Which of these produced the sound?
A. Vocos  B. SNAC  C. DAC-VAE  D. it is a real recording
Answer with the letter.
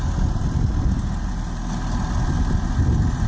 D